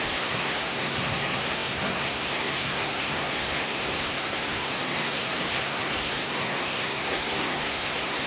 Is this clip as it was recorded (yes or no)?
no